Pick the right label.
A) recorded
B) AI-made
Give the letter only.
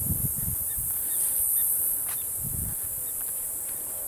B